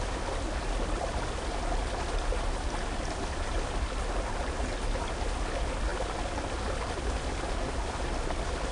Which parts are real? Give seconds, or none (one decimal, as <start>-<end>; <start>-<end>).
0.0-8.7